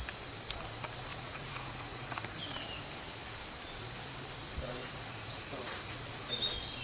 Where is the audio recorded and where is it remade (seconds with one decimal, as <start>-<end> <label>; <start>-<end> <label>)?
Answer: 0.0-1.1 recorded; 1.1-2.2 remade; 2.2-4.8 recorded; 4.8-6.3 remade; 6.3-6.8 recorded